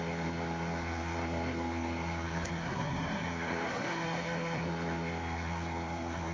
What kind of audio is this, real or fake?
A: fake